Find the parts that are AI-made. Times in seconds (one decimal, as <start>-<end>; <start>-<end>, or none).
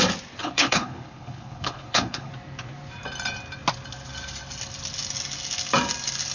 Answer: 0.4-2.3